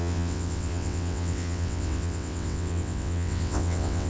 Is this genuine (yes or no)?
no